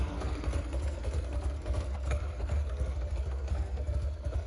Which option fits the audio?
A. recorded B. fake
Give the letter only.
B